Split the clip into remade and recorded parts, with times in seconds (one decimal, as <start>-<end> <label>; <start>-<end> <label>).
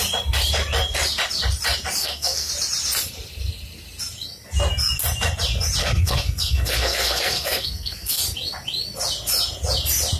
0.0-2.0 recorded; 2.0-2.5 remade; 2.5-5.8 recorded; 5.8-8.2 remade; 8.2-10.2 recorded